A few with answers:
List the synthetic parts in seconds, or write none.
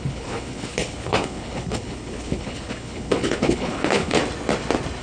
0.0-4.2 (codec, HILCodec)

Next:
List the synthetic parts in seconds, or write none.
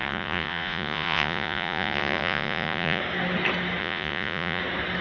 0.0-3.0 (vocoder, Vocos); 3.8-4.6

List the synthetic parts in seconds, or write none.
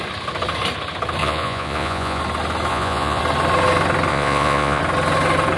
1.2-2.2 (vocoder, Vocos); 2.7-3.2; 4.1-4.8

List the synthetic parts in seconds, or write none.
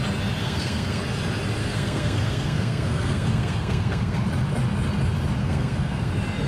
0.4-1.0 (codec, SNAC); 1.6-4.2; 5.4-6.1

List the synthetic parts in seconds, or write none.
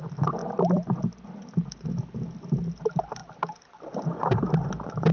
none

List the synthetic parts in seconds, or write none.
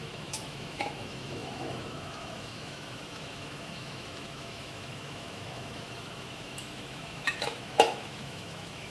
0.0-8.9 (autoencoder, DAC-VAE)